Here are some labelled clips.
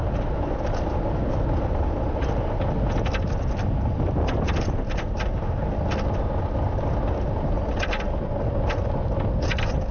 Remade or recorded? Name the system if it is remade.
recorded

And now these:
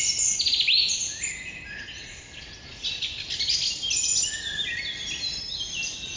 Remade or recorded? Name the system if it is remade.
recorded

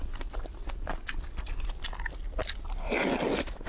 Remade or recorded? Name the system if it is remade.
recorded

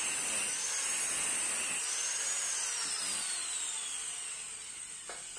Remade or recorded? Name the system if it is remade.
recorded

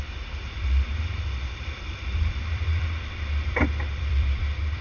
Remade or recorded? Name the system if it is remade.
remade, vocoder, BigVGAN v2